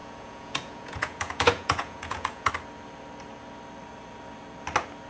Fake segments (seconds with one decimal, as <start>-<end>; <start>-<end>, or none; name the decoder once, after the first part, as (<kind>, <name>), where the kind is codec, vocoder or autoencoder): 0.0-2.5 (vocoder, Vocos)